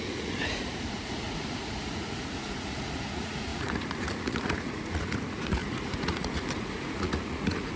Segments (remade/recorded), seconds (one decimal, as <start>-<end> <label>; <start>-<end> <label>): 0.0-7.8 remade